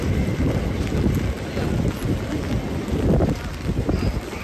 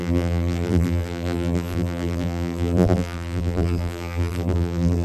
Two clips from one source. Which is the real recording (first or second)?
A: first